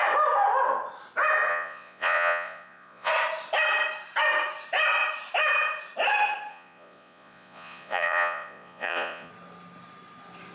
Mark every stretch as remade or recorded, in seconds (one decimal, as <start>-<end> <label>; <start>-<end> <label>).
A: 0.0-1.5 recorded; 1.5-3.1 remade; 3.1-6.5 recorded; 6.5-9.3 remade; 9.3-10.5 recorded